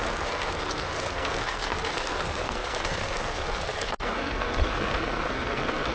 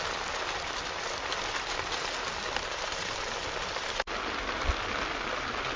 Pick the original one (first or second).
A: second